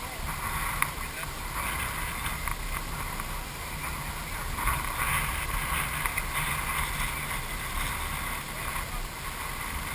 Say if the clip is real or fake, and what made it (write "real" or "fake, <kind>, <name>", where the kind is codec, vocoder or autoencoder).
real